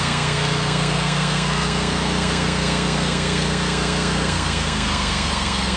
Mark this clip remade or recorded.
remade